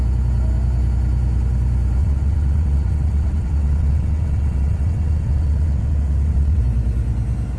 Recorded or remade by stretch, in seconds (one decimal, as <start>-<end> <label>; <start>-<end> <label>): 0.0-2.0 recorded; 2.0-6.6 remade; 6.6-7.6 recorded